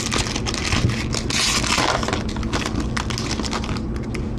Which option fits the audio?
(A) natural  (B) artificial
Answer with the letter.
A